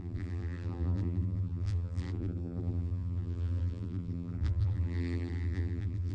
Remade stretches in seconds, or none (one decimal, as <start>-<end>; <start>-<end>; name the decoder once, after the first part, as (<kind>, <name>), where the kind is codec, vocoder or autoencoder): 0.0-6.1 (vocoder, BigVGAN v2)